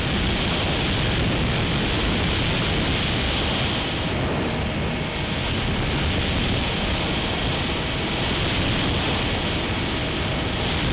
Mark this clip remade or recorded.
recorded